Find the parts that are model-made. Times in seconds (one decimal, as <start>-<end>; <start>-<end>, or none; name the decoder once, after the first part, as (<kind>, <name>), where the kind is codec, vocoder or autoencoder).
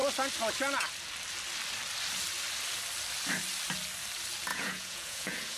4.5-5.6 (vocoder, Vocos)